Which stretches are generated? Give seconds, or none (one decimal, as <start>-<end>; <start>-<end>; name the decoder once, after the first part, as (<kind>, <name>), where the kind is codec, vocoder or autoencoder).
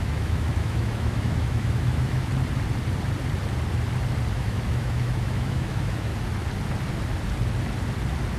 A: 0.0-2.3 (autoencoder, DAC-VAE); 4.3-6.1